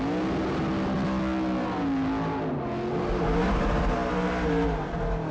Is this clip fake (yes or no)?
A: no